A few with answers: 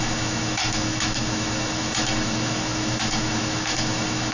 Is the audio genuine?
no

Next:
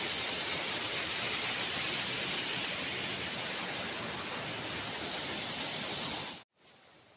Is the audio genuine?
yes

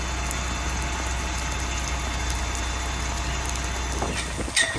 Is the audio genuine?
yes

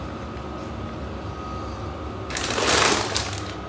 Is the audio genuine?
yes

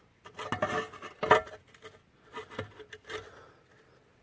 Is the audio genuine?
yes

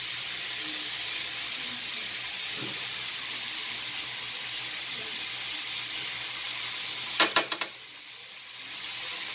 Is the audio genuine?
yes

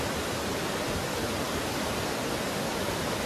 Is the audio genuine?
yes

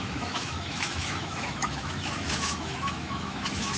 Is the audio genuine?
no